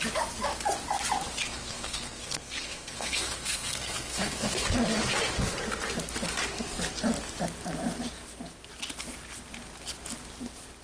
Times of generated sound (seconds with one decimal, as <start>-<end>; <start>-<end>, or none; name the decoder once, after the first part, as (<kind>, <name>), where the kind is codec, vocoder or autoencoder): 1.6-4.7 (codec, SNAC)